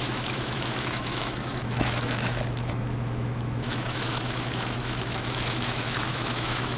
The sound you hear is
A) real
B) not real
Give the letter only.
B